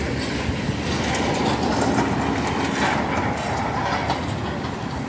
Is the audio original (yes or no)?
yes